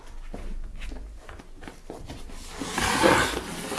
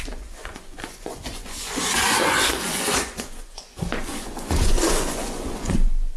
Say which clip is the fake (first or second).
second